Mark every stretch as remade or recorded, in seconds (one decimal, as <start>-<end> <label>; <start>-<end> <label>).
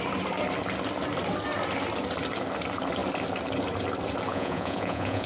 0.0-4.3 recorded; 4.3-5.3 remade